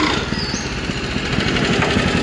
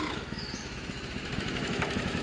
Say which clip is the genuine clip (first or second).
first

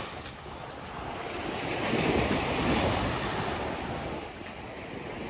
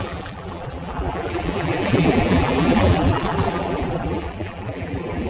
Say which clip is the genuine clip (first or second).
first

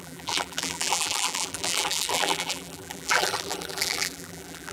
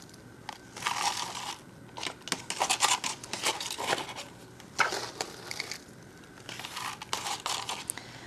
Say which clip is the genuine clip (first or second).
second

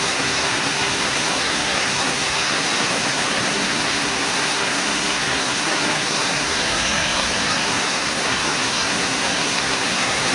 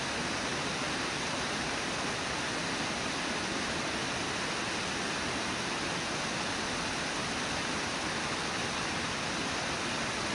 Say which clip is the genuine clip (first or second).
second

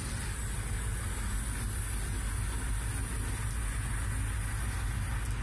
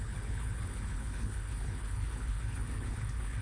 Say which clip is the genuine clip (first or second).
first